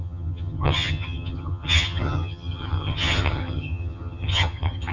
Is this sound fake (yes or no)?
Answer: yes